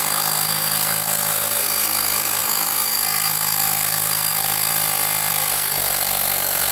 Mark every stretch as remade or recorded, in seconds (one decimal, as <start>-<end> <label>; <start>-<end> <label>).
0.0-4.7 remade; 4.7-5.3 recorded; 5.3-6.7 remade